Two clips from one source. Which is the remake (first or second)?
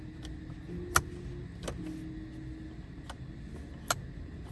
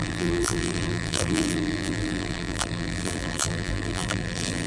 second